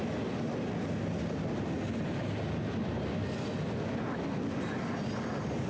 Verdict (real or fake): real